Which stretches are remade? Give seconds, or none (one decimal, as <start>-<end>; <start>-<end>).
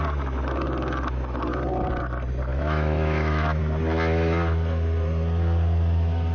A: 2.5-3.6